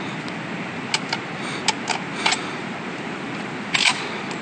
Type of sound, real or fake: real